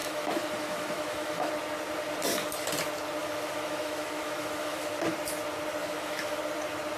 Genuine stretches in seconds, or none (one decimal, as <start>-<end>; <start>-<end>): 1.5-3.2; 5.0-5.8; 6.4-7.0